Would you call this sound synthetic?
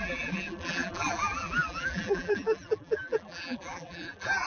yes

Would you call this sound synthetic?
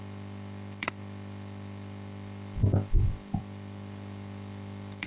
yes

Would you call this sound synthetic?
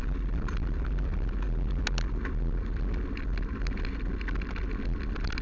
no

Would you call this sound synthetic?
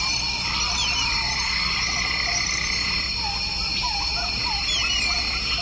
no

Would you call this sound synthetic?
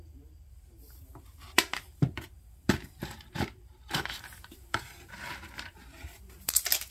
yes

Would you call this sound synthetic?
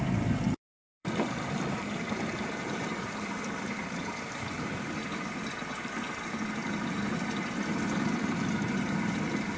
yes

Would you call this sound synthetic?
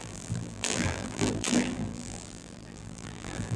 yes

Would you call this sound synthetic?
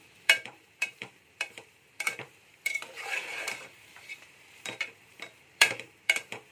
yes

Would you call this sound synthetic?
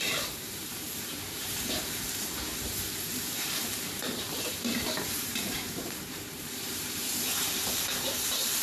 yes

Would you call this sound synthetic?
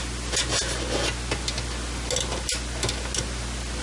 no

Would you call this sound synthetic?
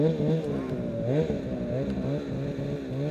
no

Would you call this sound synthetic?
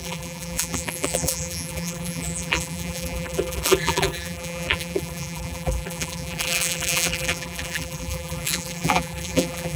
yes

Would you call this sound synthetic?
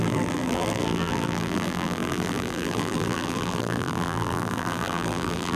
yes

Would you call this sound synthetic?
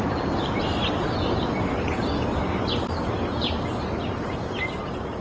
no